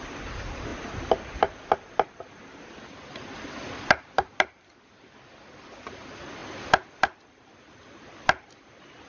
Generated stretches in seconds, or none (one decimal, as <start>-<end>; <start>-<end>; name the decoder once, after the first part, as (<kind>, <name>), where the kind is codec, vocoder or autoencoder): none